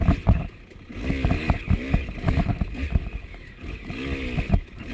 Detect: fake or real real